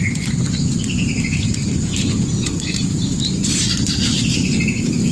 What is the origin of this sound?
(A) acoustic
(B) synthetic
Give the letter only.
B